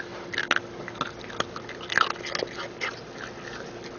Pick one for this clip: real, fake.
real